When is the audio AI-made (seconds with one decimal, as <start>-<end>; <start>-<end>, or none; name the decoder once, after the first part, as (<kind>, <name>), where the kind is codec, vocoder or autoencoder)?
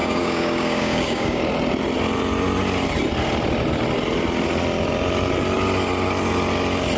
0.0-1.4 (codec, DAC)